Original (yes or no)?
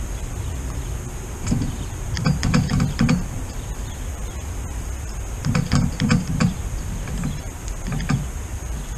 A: no